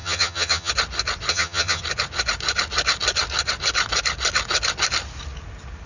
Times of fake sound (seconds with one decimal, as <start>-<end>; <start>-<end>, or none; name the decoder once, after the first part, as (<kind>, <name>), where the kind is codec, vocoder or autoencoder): 0.0-0.7 (vocoder, HiFi-GAN); 1.3-1.8